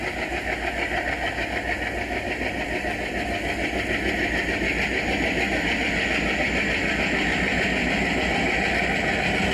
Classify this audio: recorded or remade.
recorded